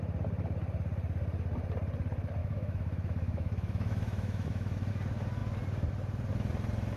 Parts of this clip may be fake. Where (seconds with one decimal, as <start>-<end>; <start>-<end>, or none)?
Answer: 2.4-4.9